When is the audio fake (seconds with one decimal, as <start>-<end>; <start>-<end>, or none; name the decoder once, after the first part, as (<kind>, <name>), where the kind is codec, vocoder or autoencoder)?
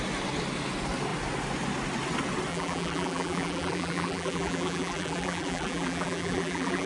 2.5-6.9 (vocoder, BigVGAN v2)